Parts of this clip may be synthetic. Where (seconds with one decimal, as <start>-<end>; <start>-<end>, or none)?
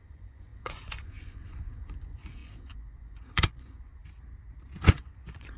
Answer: 0.0-4.0; 4.9-5.6